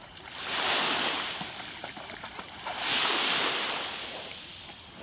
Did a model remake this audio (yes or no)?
no